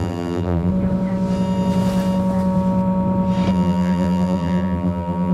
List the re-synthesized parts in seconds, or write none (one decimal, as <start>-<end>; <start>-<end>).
0.0-0.7; 3.5-5.3